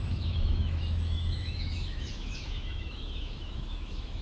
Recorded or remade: remade